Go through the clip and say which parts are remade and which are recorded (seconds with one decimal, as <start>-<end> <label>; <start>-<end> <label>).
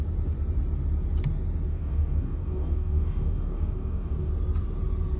0.0-1.7 recorded; 1.7-4.3 remade; 4.3-5.2 recorded